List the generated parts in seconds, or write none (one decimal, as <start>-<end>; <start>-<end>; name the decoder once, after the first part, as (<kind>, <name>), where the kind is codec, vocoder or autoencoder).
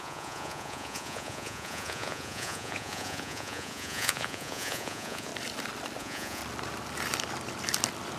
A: 0.0-5.3 (vocoder, Vocos); 6.0-6.4